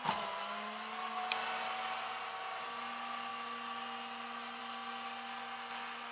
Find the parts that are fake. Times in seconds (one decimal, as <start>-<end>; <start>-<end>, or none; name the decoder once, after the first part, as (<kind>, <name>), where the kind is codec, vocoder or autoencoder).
none